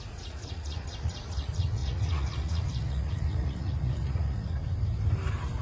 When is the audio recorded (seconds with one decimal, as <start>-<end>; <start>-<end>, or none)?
4.6-5.6